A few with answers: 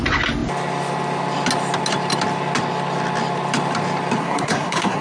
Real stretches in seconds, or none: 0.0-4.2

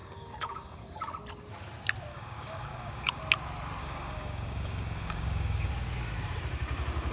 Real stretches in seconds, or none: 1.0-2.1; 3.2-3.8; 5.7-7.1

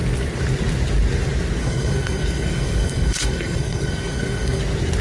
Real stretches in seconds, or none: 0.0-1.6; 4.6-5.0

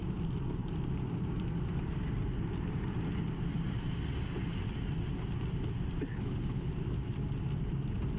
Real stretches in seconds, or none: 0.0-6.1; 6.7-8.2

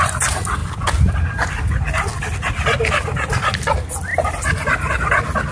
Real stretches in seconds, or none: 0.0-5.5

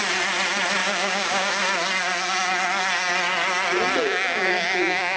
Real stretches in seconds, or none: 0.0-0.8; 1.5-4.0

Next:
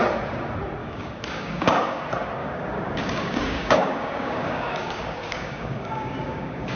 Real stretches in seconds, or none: 0.0-0.8; 2.0-2.4